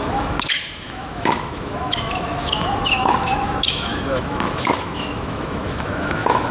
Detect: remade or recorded remade